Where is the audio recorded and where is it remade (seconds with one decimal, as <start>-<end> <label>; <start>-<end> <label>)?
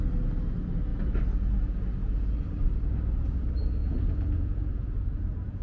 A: 0.0-3.8 recorded; 3.8-5.6 remade